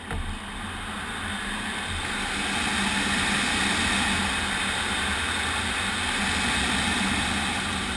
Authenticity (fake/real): real